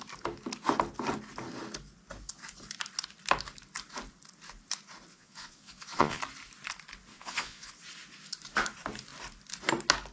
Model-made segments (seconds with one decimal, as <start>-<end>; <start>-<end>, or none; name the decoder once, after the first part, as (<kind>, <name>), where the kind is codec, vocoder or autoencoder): 5.1-6.2 (vocoder, Vocos); 7.1-7.7